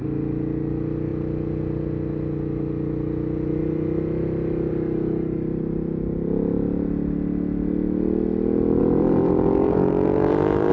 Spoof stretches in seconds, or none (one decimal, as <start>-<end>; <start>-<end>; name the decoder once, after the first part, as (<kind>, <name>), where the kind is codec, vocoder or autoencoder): 8.8-10.7 (vocoder, BigVGAN v2)